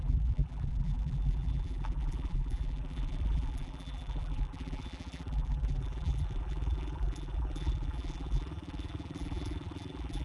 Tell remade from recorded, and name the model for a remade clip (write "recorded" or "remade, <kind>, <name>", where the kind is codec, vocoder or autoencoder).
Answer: remade, vocoder, BigVGAN v2